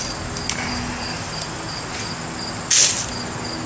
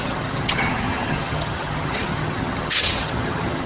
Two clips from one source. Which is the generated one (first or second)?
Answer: second